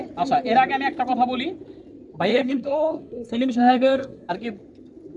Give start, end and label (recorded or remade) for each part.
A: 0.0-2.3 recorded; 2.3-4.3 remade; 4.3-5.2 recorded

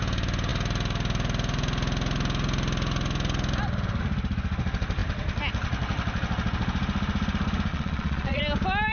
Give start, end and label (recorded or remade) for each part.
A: 0.0-7.7 recorded; 7.7-8.4 remade; 8.4-8.9 recorded

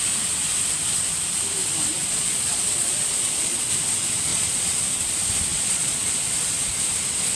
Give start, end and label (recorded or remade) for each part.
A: 0.0-2.0 recorded; 2.0-3.7 remade; 3.7-4.3 recorded; 4.3-4.8 remade; 4.8-5.5 recorded; 5.5-6.0 remade; 6.0-7.3 recorded